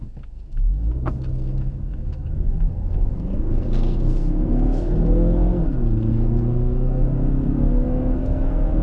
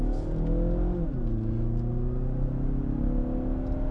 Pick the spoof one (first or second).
first